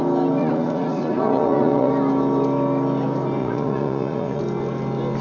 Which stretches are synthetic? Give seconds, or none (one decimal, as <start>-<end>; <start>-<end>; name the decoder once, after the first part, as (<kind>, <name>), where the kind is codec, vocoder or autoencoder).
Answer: 0.4-1.9 (vocoder, Vocos); 3.4-4.4